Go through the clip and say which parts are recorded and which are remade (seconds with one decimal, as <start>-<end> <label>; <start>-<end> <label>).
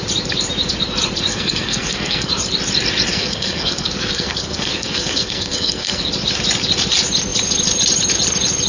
0.0-1.3 recorded; 1.3-2.3 remade; 2.3-3.1 recorded; 3.1-6.1 remade; 6.1-8.7 recorded